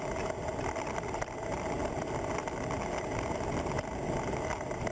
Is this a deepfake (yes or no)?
no